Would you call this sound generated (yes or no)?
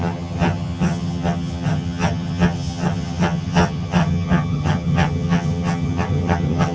yes